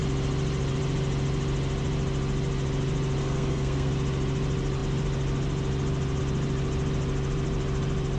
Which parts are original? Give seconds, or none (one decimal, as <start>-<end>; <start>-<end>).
0.0-3.2; 3.9-8.2